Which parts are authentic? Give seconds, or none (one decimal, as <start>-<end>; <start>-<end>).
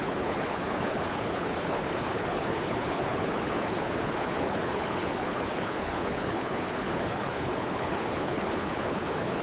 none